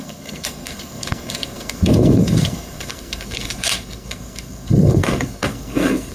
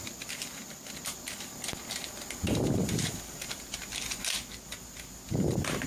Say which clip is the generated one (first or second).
first